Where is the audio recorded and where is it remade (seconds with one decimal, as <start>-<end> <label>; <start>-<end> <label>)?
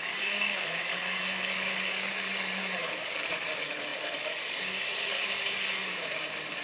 0.0-5.8 remade; 5.8-6.6 recorded